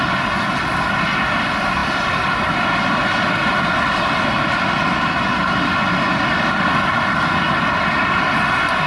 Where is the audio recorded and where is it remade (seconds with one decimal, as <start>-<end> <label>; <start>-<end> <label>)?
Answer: 0.0-8.9 recorded